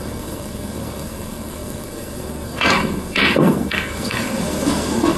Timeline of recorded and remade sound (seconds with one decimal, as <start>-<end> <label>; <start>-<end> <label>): 0.0-5.2 remade